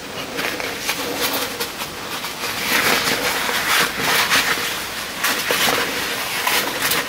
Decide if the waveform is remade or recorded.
recorded